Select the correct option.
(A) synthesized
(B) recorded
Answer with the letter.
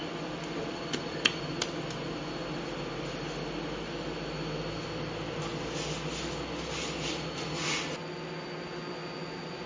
B